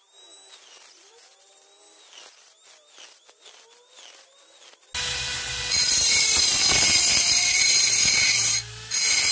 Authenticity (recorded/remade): recorded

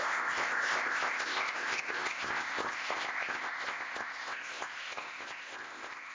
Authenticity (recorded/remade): remade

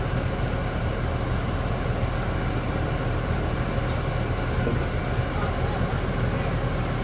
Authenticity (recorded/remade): recorded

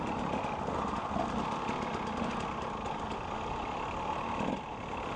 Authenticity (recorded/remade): recorded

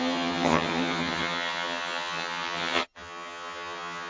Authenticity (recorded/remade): remade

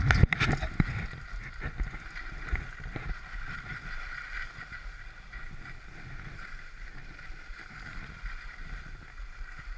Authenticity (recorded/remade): recorded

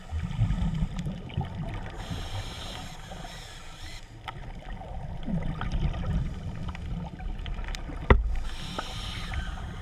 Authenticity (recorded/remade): recorded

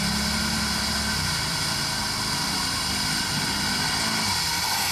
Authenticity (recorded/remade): recorded